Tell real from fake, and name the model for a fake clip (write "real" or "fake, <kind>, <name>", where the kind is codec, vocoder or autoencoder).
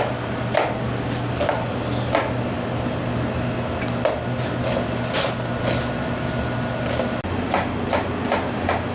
real